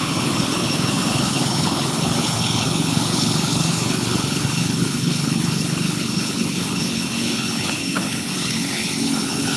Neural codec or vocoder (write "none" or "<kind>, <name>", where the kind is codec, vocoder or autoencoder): codec, HILCodec